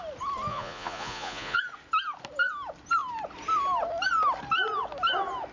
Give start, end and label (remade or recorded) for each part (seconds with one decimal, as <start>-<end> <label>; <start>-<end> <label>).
0.0-0.5 recorded; 0.5-1.6 remade; 1.6-5.5 recorded